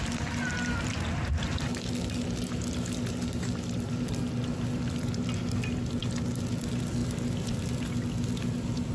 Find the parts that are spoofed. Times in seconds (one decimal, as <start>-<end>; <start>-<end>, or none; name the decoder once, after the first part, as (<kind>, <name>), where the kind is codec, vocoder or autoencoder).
7.0-7.6 (vocoder, BigVGAN v2)